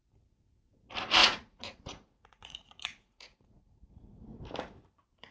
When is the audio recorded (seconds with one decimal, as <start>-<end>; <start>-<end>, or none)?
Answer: 0.0-1.2; 4.4-5.3